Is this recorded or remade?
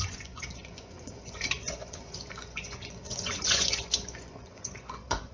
remade